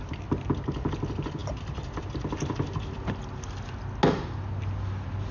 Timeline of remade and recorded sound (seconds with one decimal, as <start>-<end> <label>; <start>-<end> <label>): 0.0-5.3 recorded